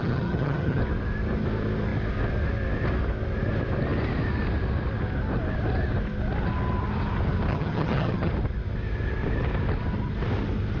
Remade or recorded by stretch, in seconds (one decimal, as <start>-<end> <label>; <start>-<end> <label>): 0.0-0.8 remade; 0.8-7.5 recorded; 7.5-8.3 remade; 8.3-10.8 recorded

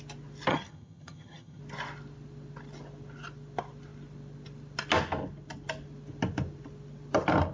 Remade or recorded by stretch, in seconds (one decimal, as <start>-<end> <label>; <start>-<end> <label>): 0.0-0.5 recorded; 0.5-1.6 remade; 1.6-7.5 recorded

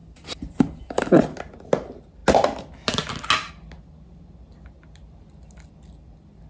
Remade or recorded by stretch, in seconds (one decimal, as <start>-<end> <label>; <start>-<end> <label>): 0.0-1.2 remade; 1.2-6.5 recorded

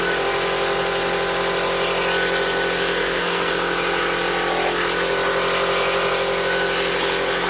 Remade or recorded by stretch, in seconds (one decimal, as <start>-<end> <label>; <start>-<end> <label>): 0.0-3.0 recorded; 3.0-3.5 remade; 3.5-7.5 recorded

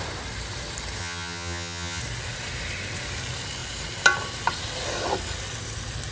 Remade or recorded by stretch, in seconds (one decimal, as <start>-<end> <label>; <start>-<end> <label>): 0.0-1.0 recorded; 1.0-2.0 remade; 2.0-6.1 recorded